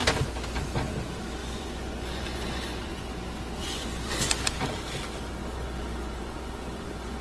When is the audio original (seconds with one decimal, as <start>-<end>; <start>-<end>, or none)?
0.0-1.4; 3.1-3.6; 4.4-5.4